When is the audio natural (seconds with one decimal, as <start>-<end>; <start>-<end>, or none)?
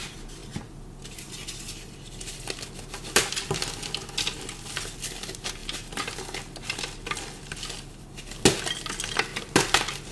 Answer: 0.0-5.6; 6.2-10.1